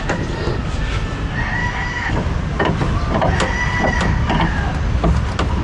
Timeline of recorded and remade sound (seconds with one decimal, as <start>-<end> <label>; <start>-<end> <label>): 0.0-1.6 recorded; 1.6-2.1 remade; 2.1-5.6 recorded